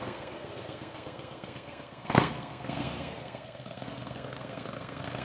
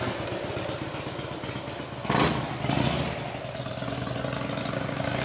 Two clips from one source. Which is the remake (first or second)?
first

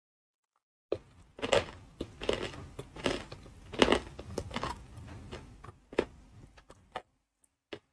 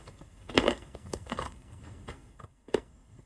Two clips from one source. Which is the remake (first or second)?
second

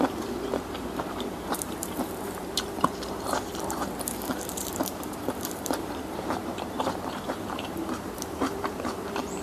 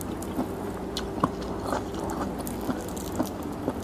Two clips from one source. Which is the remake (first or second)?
first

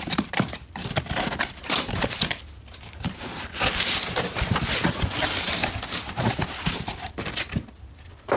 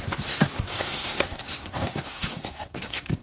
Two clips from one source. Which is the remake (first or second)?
second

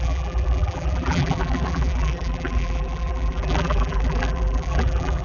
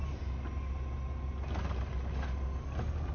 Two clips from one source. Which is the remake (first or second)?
first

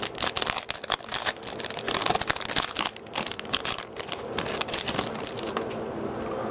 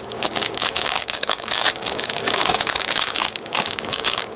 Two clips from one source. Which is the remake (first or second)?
second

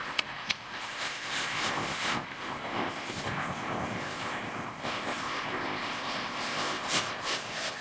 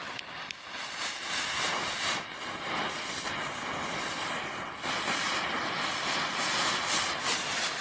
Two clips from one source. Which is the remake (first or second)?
first